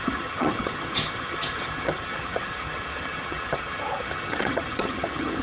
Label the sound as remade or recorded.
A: remade